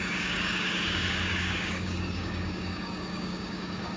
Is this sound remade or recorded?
remade